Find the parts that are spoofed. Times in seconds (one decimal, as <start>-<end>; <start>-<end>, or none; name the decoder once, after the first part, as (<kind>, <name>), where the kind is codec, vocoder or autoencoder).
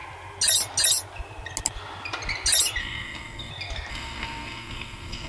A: 2.8-3.5 (codec, SNAC); 3.9-5.3